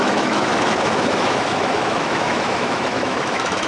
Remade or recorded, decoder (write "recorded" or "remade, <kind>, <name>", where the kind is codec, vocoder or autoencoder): remade, autoencoder, DAC-VAE